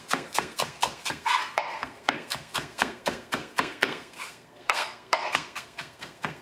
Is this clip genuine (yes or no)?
no